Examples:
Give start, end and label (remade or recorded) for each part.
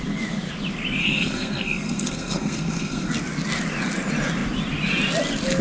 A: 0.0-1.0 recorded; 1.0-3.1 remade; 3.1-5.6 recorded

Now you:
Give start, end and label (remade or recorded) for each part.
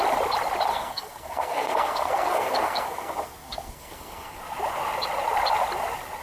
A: 0.0-0.7 recorded; 0.7-4.4 remade; 4.4-6.2 recorded